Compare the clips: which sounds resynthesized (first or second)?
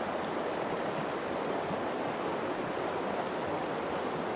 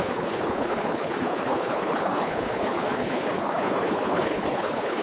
second